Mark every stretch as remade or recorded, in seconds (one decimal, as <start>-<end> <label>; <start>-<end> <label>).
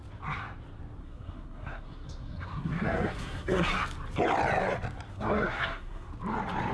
0.0-1.0 recorded; 1.0-3.7 remade; 3.7-5.1 recorded; 5.1-6.1 remade; 6.1-6.7 recorded